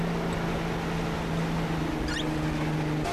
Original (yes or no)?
yes